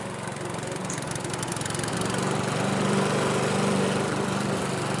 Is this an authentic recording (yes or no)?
no